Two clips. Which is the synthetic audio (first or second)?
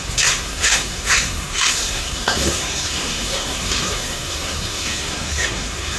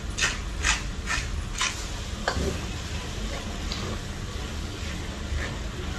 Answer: first